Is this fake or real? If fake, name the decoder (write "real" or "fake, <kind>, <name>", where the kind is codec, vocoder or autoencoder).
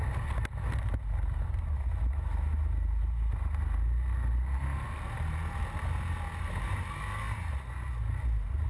real